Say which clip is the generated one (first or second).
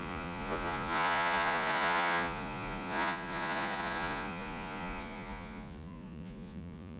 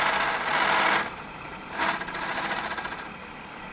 first